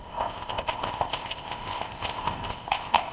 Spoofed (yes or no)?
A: yes